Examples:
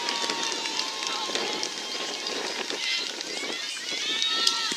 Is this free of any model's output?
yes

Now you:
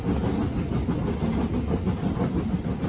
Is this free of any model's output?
yes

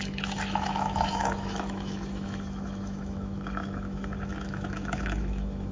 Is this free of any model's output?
no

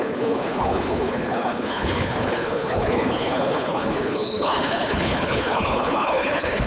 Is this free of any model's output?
no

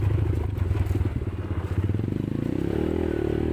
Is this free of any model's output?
yes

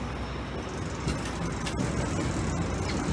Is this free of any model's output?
yes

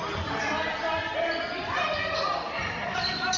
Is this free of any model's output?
yes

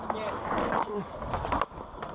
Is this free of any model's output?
yes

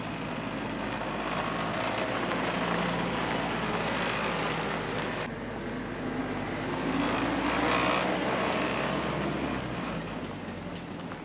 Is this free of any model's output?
yes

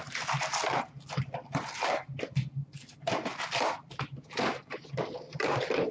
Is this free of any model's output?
yes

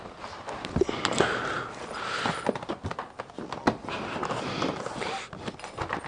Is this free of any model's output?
yes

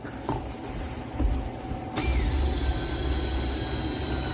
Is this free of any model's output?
yes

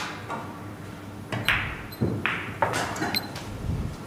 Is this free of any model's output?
no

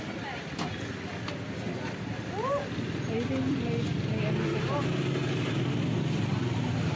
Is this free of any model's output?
yes